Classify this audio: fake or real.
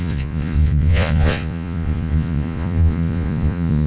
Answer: fake